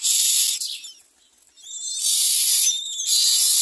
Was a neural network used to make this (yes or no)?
no